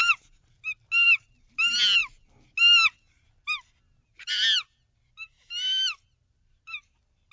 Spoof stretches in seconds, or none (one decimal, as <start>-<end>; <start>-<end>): none